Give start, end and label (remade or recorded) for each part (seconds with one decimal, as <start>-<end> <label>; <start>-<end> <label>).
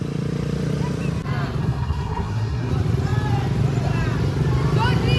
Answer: 0.0-1.6 recorded; 1.6-2.7 remade; 2.7-5.2 recorded